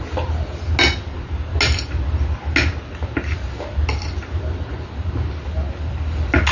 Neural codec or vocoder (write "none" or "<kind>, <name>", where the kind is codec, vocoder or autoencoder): none